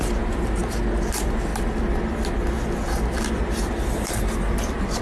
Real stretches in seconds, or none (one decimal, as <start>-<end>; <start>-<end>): 0.6-1.1; 1.5-4.5